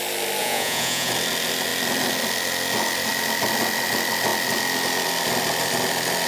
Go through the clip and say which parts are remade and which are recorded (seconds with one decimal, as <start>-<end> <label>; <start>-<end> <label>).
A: 0.0-0.4 recorded; 0.4-1.1 remade; 1.1-6.3 recorded